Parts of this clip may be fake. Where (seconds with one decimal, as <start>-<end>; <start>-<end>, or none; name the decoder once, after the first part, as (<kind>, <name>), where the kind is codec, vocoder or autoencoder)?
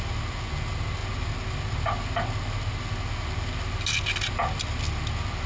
none